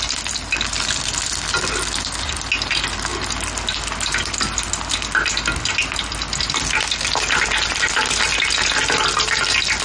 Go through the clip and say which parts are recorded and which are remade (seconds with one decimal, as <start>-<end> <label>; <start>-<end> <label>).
0.0-9.8 recorded